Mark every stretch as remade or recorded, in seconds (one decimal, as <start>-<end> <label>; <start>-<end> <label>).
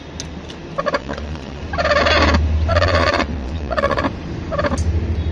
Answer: 0.0-1.0 recorded; 1.0-1.6 remade; 1.6-2.7 recorded; 2.7-4.0 remade; 4.0-5.3 recorded